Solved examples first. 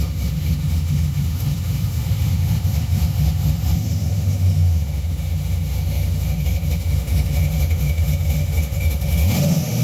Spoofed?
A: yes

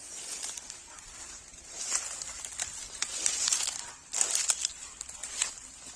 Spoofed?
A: no